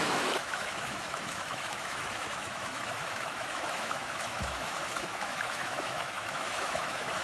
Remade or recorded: remade